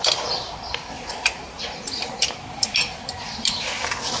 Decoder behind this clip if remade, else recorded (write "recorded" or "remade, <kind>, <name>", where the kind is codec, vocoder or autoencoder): recorded